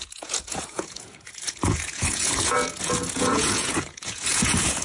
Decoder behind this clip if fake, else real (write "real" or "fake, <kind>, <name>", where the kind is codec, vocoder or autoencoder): fake, vocoder, Vocos